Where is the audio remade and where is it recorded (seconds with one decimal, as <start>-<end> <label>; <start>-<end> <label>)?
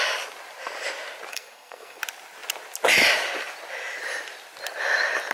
0.0-1.3 recorded; 1.3-2.0 remade; 2.0-5.3 recorded